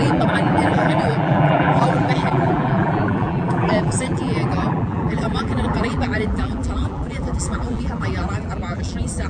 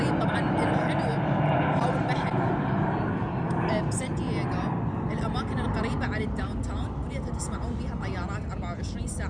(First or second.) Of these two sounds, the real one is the second